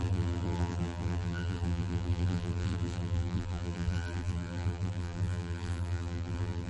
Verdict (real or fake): fake